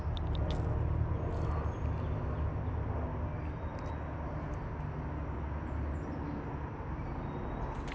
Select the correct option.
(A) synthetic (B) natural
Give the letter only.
B